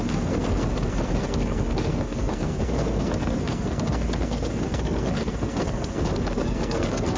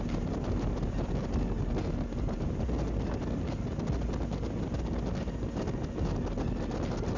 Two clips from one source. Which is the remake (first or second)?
first